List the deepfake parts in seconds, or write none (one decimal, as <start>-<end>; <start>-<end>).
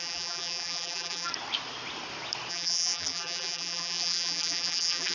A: 0.0-1.3; 2.5-5.1